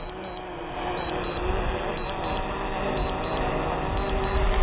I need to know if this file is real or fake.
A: real